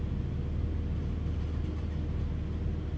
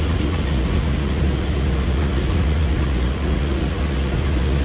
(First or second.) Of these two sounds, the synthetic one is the second